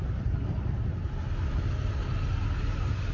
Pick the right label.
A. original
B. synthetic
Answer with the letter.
A